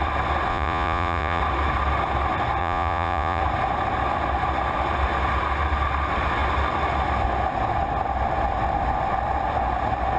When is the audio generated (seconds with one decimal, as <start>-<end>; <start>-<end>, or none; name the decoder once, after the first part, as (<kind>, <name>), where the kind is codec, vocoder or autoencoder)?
0.5-1.4 (vocoder, Vocos); 2.6-3.4